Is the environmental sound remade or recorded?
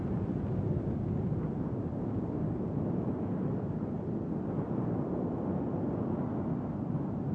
recorded